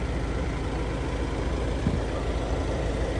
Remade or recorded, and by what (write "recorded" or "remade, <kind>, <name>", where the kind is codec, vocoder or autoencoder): recorded